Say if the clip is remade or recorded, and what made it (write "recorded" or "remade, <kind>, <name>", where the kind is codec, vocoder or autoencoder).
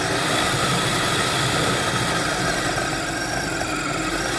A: recorded